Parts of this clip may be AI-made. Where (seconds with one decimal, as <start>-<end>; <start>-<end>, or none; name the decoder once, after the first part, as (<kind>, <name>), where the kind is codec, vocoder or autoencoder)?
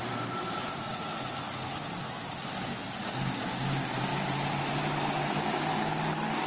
none